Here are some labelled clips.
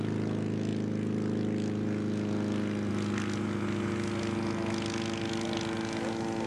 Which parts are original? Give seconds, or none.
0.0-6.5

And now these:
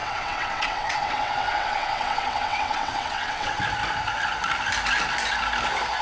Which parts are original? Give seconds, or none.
3.6-6.0

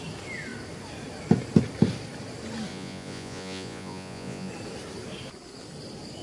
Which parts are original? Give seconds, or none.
0.0-2.7; 4.5-6.2

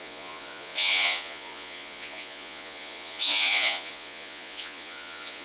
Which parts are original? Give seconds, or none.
none

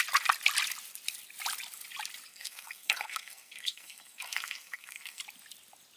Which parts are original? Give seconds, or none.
0.0-2.3; 5.2-6.0

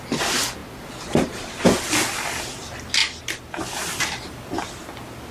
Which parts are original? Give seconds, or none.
0.0-5.3

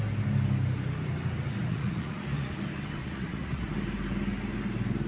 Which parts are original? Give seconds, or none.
0.0-1.6; 2.5-3.0; 3.7-5.1

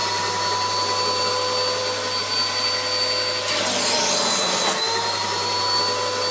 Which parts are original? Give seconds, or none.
0.0-6.3